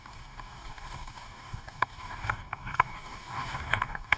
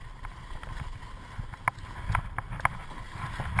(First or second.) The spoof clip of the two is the first